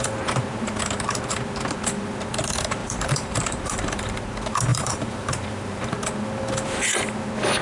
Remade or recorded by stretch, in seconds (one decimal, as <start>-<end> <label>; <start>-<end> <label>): 0.0-2.8 recorded; 2.8-4.2 remade; 4.2-4.7 recorded; 4.7-5.9 remade; 5.9-7.6 recorded